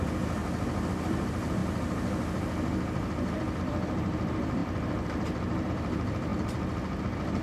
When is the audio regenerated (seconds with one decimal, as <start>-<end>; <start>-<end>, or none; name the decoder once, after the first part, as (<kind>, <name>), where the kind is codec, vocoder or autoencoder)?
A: 0.0-0.4 (vocoder, BigVGAN v2); 0.9-1.6; 3.6-6.3; 7.0-7.4